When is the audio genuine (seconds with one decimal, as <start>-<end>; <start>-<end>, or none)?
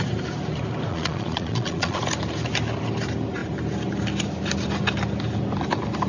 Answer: 0.0-0.9; 2.0-6.1